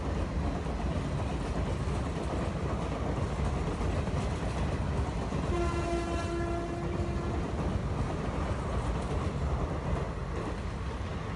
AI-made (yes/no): no